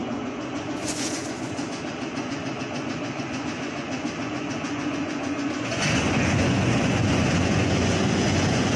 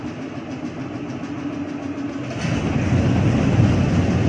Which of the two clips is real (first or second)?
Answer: second